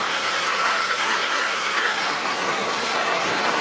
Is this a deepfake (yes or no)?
yes